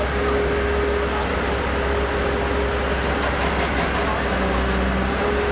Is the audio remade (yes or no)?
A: no